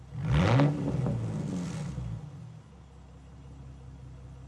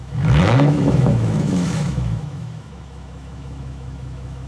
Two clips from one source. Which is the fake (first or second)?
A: second